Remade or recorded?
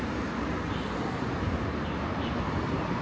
remade